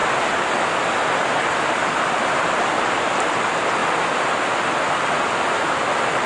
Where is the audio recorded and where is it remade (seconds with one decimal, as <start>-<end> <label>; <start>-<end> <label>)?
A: 0.0-6.3 recorded